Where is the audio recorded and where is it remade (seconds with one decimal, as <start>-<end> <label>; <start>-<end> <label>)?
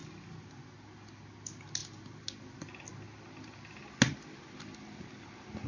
0.0-5.7 recorded